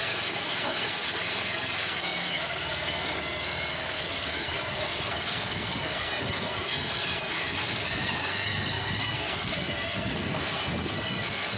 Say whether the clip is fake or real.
fake